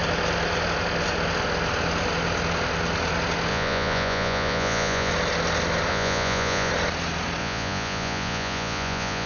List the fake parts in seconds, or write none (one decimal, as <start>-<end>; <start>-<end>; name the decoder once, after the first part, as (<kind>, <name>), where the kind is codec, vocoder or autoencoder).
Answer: 3.5-5.1 (vocoder, Vocos); 5.9-6.7; 7.4-9.3